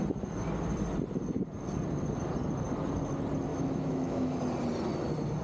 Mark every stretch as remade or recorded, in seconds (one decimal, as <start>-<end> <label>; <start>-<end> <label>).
0.0-3.5 recorded; 3.5-4.4 remade; 4.4-5.4 recorded